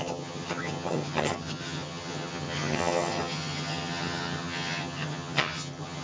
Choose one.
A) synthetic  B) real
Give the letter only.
A